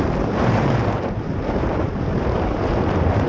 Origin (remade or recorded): remade